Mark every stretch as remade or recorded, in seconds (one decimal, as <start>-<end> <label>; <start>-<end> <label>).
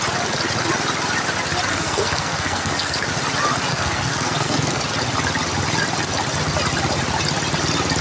0.0-1.7 recorded; 1.7-3.1 remade; 3.1-3.7 recorded; 3.7-4.8 remade; 4.8-8.0 recorded